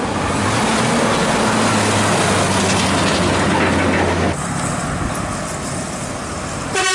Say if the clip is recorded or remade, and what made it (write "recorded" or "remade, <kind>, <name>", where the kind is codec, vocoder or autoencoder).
recorded